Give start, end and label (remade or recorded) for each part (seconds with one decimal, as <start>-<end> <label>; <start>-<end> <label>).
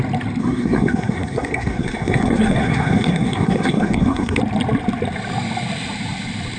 0.0-0.4 recorded; 0.4-4.4 remade; 4.4-6.6 recorded